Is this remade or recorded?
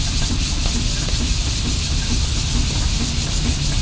recorded